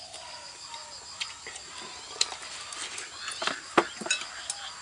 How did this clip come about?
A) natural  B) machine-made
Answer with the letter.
A